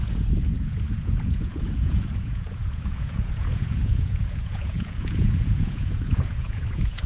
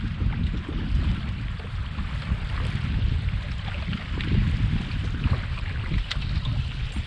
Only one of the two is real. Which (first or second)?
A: second